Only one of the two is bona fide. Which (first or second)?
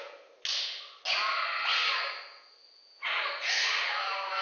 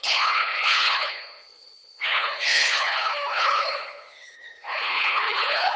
first